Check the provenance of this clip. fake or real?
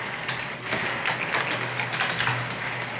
real